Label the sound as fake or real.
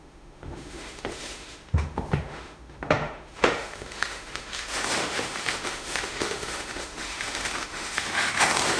fake